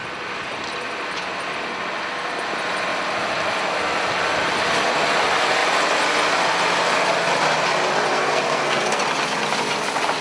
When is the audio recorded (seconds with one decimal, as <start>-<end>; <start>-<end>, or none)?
0.0-8.1; 9.0-10.2

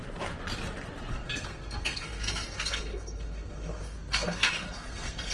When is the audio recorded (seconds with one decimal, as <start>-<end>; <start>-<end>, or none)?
0.0-1.1

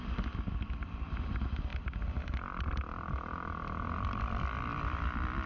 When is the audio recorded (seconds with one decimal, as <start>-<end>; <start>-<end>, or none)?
0.0-5.5

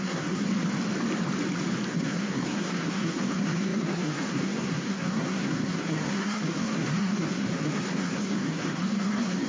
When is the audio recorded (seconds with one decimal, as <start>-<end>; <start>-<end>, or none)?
0.5-1.9

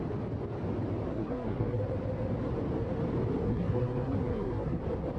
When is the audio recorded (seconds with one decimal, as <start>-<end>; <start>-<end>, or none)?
0.0-1.1; 1.8-3.4; 4.8-5.2

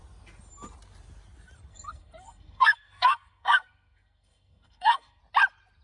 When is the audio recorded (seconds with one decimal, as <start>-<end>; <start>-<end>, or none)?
0.0-1.7; 5.2-5.8